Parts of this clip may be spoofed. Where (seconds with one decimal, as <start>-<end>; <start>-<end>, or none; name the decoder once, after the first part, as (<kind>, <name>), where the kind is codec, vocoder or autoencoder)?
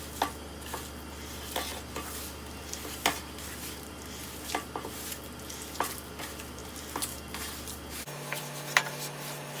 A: none